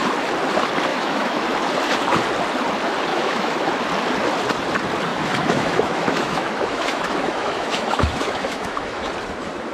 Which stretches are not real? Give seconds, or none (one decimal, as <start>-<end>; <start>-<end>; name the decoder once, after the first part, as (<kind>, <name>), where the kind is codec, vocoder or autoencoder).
0.9-1.4 (autoencoder, DAC-VAE); 3.1-3.7; 5.1-9.1